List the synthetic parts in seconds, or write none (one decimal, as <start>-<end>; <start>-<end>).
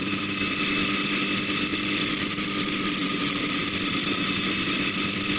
0.0-0.6; 3.0-3.6; 4.0-4.6